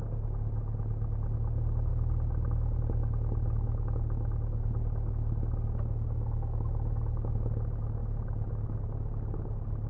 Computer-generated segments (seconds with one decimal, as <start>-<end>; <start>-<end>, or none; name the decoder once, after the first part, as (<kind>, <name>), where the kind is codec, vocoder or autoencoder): none